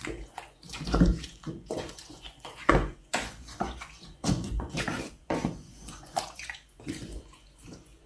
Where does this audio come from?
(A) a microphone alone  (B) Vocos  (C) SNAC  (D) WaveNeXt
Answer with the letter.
B